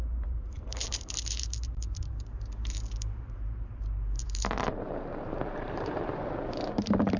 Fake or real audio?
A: fake